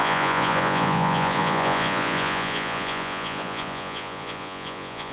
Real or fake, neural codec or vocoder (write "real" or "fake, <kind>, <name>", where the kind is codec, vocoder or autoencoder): fake, vocoder, Vocos